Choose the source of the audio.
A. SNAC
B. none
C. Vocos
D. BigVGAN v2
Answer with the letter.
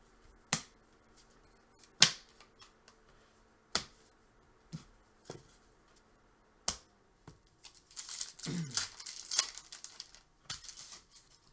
B